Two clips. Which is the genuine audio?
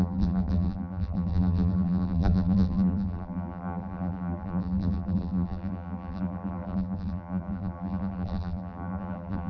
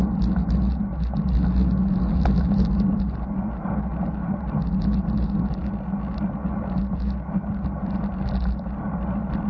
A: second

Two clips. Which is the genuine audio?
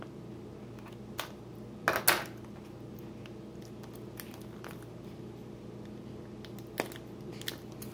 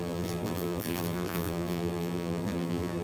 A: first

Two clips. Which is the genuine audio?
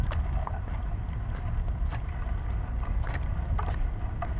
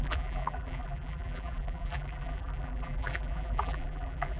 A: first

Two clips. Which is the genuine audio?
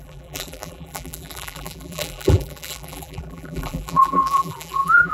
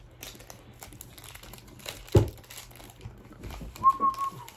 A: second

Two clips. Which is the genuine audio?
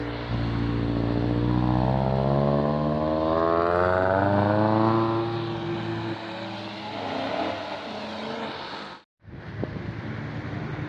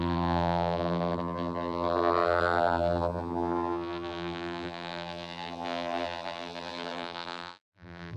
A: first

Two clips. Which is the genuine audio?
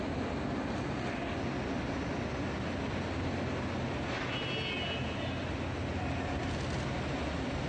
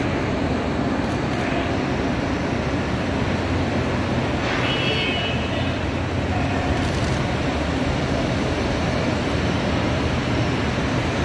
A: first